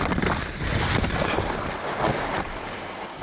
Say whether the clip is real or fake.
real